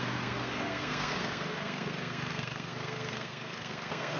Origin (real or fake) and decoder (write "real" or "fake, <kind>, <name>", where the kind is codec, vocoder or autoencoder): fake, codec, SNAC